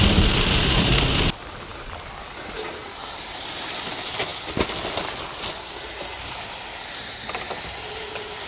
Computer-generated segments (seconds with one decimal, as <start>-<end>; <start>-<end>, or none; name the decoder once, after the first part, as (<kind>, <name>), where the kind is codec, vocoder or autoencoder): none

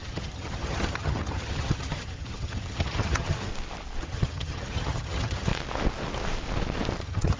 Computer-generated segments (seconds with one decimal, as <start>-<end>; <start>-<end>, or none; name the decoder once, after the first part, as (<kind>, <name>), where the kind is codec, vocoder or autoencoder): 0.0-3.5 (vocoder, HiFi-GAN); 4.0-5.5; 7.0-7.4

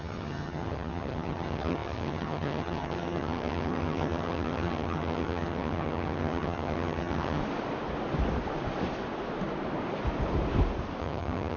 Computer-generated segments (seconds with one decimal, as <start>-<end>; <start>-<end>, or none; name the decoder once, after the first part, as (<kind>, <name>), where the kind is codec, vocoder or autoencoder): 0.0-7.4 (vocoder, HiFi-GAN); 11.0-11.6

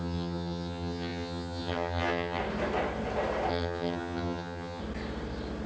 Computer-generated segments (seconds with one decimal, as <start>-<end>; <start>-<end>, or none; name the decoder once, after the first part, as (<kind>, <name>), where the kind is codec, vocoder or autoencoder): 0.0-2.4 (vocoder, HiFi-GAN); 3.5-4.8